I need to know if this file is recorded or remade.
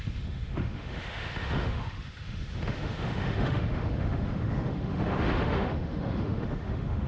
remade